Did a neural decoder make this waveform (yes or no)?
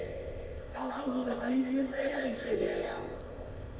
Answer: yes